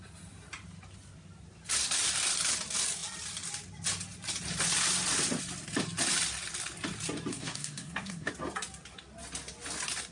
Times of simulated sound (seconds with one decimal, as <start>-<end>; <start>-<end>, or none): 7.3-8.3